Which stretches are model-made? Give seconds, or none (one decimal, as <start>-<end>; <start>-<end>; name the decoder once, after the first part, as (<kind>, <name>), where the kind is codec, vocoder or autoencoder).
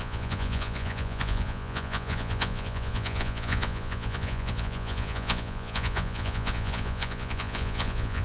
0.0-8.2 (vocoder, Vocos)